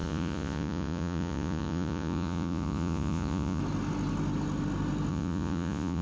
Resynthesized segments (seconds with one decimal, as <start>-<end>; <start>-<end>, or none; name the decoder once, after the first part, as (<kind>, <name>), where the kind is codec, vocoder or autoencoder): 0.0-3.6 (vocoder, Vocos); 5.1-6.0